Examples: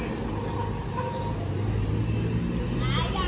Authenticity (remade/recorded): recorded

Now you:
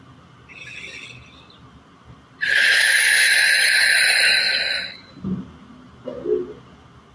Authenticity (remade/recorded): recorded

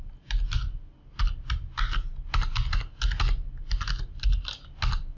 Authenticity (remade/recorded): recorded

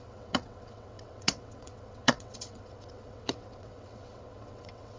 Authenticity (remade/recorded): remade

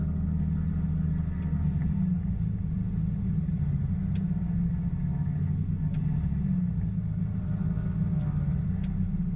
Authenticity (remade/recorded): recorded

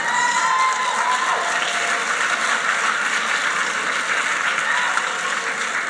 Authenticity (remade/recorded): recorded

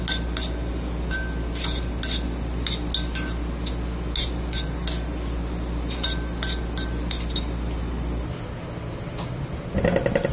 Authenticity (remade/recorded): recorded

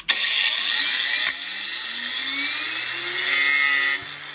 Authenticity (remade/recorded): recorded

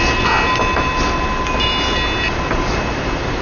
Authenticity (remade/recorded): recorded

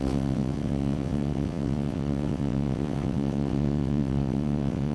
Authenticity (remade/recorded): remade